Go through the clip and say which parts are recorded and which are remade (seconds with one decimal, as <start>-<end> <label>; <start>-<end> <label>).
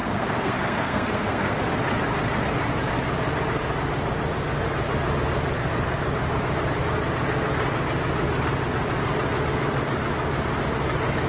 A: 0.0-1.6 remade; 1.6-11.3 recorded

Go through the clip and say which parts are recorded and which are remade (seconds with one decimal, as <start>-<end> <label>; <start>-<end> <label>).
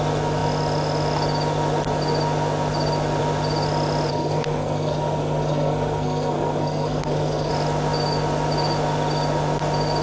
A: 0.0-4.1 recorded; 4.1-7.5 remade; 7.5-10.0 recorded